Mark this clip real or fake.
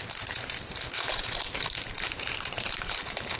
fake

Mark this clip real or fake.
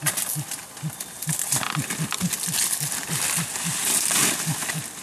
real